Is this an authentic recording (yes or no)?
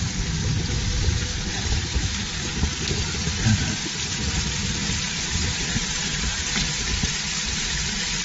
no